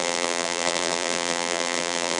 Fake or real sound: fake